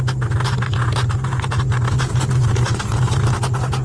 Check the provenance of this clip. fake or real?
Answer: real